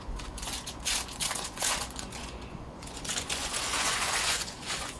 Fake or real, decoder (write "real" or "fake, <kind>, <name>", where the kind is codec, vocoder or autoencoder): fake, vocoder, Vocos